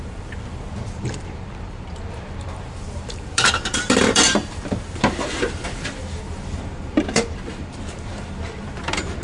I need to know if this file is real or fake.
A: fake